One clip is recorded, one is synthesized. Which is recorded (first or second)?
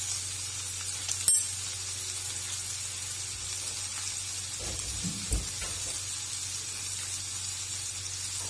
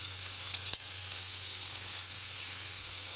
first